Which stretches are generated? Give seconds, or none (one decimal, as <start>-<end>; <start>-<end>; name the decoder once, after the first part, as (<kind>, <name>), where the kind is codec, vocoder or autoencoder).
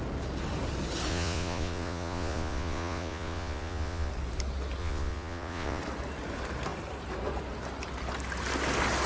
1.1-4.1 (vocoder, Vocos); 4.8-5.8